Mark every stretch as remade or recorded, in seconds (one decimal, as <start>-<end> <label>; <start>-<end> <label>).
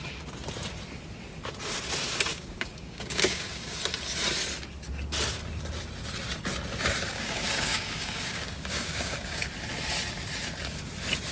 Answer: 0.0-2.3 recorded; 2.3-3.8 remade; 3.8-7.1 recorded; 7.1-9.5 remade; 9.5-11.3 recorded